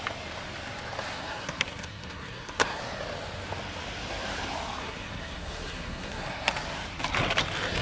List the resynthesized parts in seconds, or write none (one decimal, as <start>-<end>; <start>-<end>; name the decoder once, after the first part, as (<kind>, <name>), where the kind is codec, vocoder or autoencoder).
1.1-2.8 (codec, SNAC); 4.8-6.5